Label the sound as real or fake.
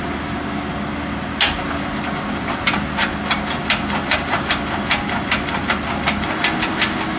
real